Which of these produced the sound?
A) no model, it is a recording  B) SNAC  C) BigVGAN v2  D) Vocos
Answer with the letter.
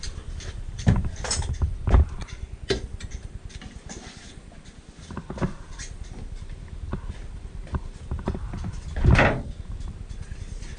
A